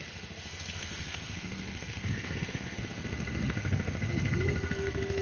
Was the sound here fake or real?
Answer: fake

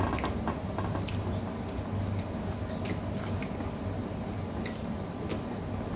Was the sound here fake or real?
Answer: real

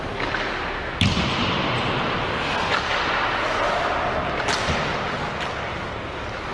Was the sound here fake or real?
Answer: real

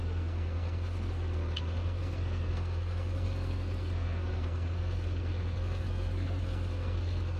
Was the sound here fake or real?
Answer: fake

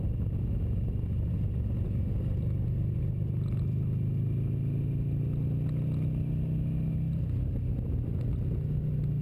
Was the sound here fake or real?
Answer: real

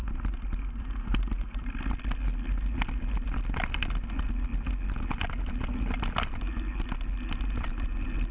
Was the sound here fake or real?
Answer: real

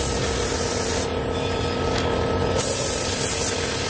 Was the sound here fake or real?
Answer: real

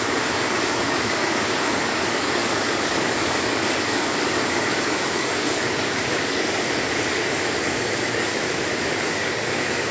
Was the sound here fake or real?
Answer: fake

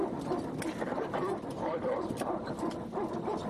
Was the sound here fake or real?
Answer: fake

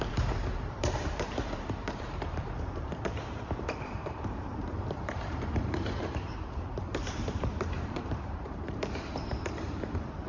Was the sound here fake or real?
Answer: fake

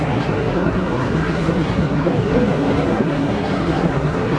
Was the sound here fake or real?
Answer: fake